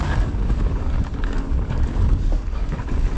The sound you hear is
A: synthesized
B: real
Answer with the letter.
A